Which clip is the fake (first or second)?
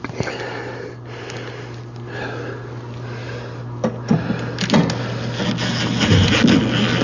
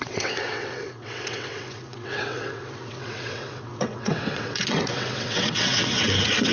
second